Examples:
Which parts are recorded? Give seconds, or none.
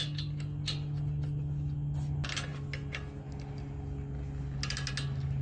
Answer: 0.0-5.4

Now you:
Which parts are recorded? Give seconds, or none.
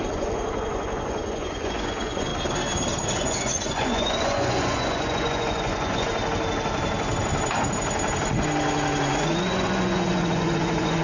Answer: 2.3-3.1; 6.1-9.0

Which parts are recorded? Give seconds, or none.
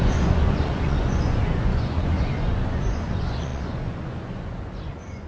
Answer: none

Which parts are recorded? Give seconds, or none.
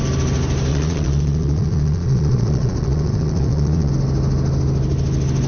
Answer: 0.0-0.7; 3.9-5.5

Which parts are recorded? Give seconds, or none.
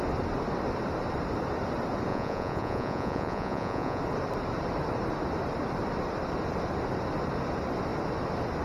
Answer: 0.0-2.1; 4.0-8.6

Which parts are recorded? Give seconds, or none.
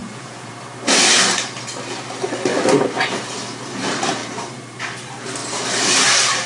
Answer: 0.5-6.5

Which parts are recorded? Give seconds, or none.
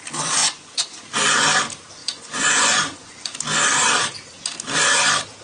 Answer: 0.0-0.4; 1.0-2.0; 3.3-5.4